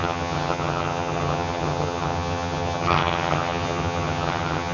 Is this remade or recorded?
remade